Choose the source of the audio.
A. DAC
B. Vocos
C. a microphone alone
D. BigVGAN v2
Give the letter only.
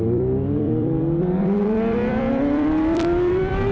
D